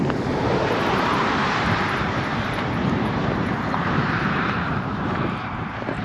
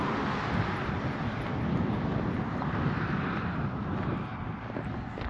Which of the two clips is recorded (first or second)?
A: second